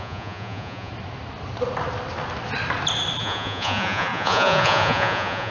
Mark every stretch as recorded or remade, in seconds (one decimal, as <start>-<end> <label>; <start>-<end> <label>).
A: 0.0-0.9 remade; 0.9-3.2 recorded; 3.2-5.5 remade